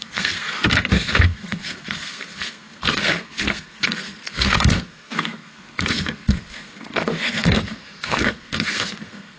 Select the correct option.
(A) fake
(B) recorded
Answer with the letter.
A